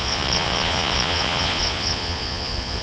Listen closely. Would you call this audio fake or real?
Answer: fake